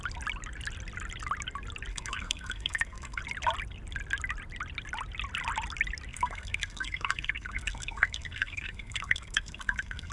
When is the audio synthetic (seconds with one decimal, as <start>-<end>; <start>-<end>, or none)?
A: 1.9-3.2; 6.1-10.1